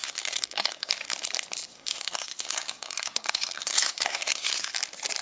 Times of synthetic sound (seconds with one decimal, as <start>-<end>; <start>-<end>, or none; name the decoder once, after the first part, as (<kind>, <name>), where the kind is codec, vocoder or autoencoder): 0.0-0.9 (codec, SNAC); 1.7-4.7